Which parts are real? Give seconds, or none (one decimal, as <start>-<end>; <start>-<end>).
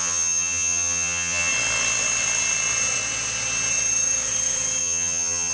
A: 1.5-4.8